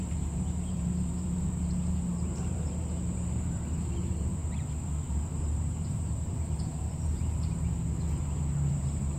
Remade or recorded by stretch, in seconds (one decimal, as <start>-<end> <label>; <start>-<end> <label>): 0.0-4.4 remade; 4.4-5.0 recorded; 5.0-7.8 remade; 7.8-8.7 recorded; 8.7-9.2 remade